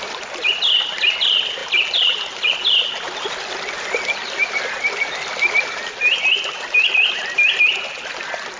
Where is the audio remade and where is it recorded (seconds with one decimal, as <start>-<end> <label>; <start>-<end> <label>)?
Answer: 0.0-8.6 recorded